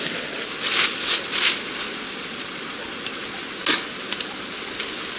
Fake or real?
real